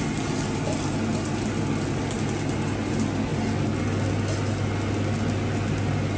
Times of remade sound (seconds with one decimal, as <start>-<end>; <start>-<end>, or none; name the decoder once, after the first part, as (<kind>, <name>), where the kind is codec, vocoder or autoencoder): none